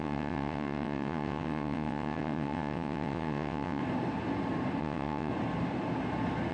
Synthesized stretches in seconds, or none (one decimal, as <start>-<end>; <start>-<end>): 0.0-3.8; 4.8-5.3